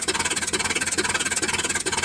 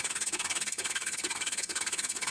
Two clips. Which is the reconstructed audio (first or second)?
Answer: second